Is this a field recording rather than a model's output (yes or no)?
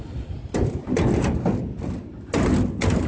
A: yes